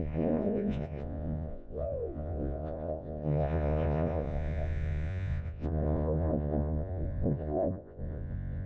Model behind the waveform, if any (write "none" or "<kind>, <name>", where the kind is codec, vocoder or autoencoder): vocoder, Vocos